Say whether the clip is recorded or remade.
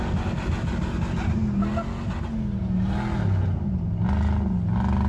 recorded